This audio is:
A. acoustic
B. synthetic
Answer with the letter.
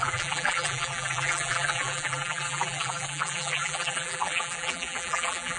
B